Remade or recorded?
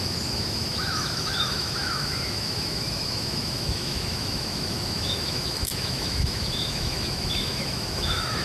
remade